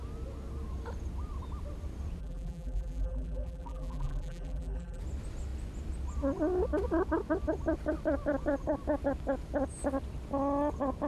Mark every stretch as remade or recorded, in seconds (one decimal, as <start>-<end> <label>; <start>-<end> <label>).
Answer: 0.0-2.2 recorded; 2.2-5.0 remade; 5.0-11.1 recorded